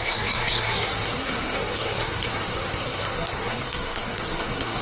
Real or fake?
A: fake